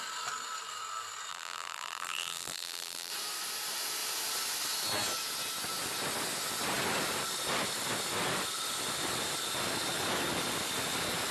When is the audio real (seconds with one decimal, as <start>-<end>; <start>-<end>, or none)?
0.0-1.3; 3.1-11.3